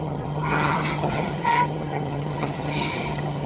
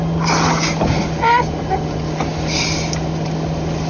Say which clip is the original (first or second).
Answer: second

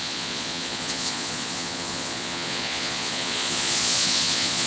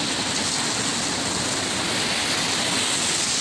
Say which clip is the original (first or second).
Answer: second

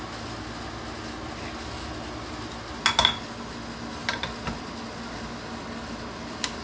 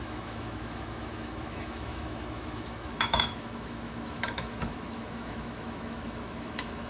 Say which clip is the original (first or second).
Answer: first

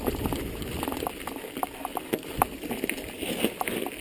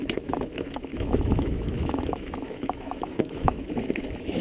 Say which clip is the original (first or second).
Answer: first